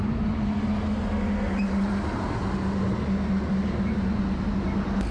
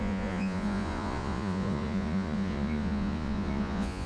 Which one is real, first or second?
first